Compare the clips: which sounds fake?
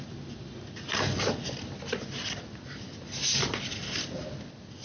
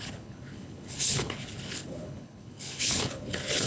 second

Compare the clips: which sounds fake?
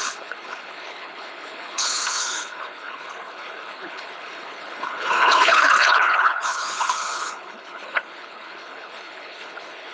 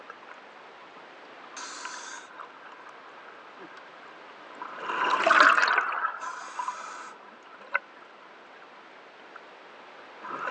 first